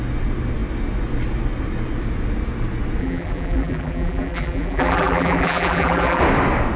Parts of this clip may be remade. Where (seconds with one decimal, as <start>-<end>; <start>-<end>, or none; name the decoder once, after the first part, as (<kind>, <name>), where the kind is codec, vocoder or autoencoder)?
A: 3.0-6.2 (vocoder, BigVGAN v2)